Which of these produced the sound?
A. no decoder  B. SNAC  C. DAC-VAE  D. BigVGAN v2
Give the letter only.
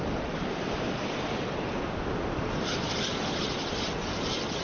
A